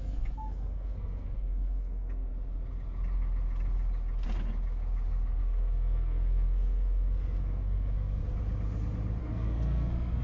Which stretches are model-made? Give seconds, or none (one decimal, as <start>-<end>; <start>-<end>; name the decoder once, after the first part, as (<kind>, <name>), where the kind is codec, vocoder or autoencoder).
0.0-2.3 (codec, SNAC); 5.4-8.2; 9.2-10.2